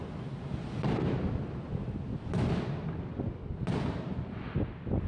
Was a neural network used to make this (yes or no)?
no